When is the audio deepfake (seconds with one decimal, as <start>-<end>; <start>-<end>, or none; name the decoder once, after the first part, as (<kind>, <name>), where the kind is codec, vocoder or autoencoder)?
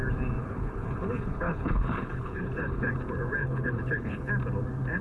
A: 0.4-2.9 (codec, HILCodec); 3.4-4.3